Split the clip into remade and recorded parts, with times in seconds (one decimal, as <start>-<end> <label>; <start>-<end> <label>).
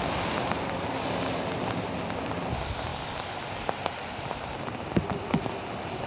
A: 0.0-6.1 recorded